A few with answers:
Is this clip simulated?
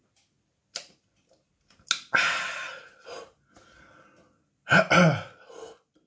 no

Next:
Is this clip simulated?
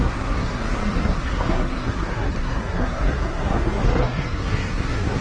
yes